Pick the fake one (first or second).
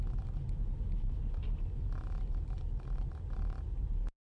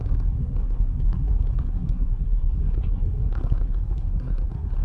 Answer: second